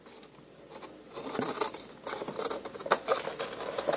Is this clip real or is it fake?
real